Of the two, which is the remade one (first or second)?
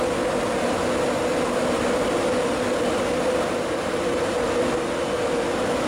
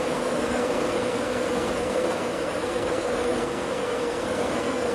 second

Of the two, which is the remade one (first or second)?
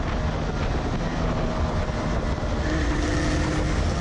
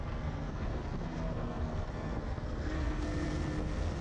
second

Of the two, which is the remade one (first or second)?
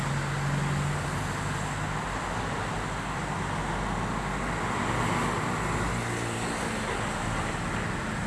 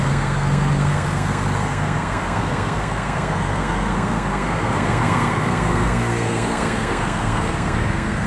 second